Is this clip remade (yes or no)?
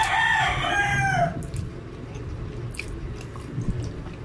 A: no